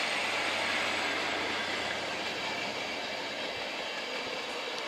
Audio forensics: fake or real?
fake